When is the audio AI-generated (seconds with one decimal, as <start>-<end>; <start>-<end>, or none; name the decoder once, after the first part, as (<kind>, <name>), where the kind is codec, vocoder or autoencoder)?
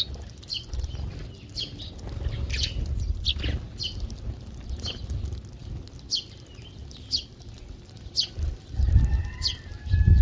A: none